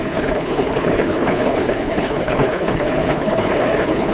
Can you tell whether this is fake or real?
fake